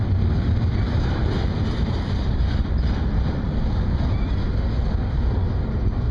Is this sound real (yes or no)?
yes